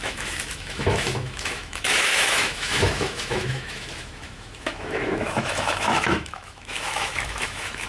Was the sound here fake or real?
fake